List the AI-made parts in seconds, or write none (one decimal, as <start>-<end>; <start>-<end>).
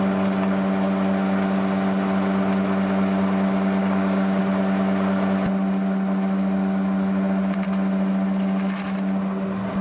3.8-4.4